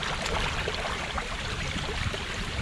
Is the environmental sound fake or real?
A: real